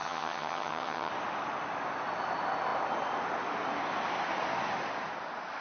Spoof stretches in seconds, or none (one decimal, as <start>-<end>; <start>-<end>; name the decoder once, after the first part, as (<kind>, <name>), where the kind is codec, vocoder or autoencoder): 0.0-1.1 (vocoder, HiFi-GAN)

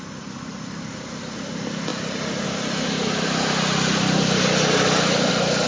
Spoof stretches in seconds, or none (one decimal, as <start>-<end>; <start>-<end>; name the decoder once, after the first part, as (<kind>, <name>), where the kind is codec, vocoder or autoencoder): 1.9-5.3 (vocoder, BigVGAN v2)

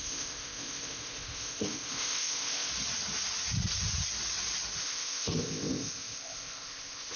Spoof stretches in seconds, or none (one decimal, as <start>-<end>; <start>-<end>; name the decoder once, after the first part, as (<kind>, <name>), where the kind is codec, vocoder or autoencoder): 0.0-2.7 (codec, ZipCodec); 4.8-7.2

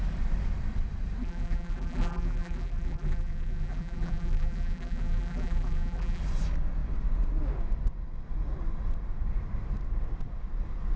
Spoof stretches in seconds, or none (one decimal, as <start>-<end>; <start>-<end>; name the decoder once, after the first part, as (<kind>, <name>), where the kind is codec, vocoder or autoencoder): 1.2-6.2 (vocoder, BigVGAN v2)

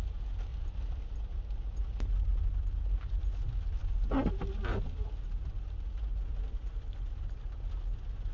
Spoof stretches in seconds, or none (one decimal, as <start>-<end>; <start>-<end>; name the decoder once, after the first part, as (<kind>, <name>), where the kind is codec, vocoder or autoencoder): 0.5-2.0 (vocoder, BigVGAN v2)

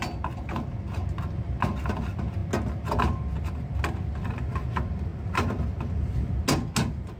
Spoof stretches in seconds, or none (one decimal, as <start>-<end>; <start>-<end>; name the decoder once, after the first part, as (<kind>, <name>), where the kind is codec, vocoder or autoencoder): none

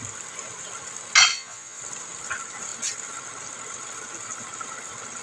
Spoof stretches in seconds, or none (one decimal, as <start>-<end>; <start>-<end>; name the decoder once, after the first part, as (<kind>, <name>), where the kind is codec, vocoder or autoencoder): 1.3-1.8 (vocoder, Vocos)